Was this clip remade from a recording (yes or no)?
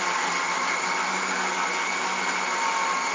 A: no